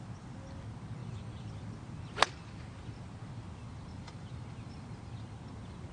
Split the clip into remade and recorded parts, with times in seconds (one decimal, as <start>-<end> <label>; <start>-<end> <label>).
0.0-1.0 recorded; 1.0-1.5 remade; 1.5-5.9 recorded